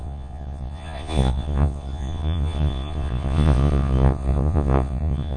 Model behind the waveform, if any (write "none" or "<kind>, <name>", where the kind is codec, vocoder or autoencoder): vocoder, Vocos